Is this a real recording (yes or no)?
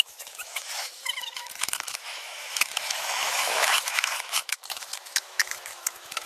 no